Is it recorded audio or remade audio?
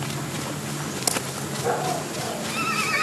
recorded